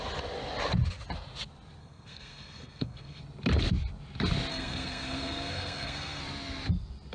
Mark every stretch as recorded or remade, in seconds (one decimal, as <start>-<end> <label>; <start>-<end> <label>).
0.0-1.8 recorded; 1.8-3.2 remade; 3.2-4.5 recorded; 4.5-6.2 remade; 6.2-7.1 recorded